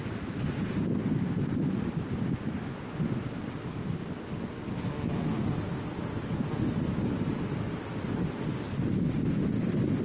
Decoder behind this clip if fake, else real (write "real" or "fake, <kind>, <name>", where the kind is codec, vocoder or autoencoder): real